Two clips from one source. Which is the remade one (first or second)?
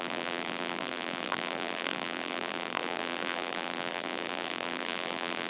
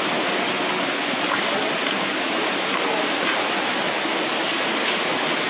first